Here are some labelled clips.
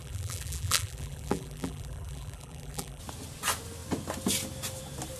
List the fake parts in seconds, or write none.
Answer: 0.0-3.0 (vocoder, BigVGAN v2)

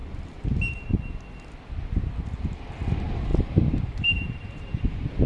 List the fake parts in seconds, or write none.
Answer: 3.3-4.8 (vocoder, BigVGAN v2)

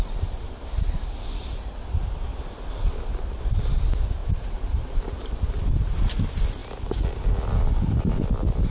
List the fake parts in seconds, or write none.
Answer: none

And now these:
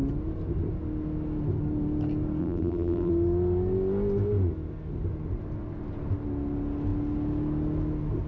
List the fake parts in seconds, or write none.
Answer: 2.4-3.1 (vocoder, BigVGAN v2)

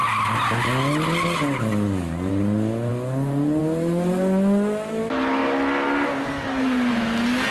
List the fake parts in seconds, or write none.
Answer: none

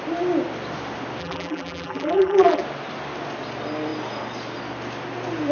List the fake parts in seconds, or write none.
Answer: 1.2-2.6 (vocoder, BigVGAN v2)

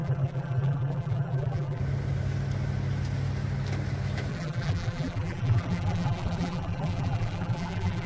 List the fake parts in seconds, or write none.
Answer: 0.0-1.8 (vocoder, BigVGAN v2); 4.3-8.1